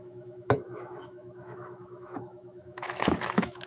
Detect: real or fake fake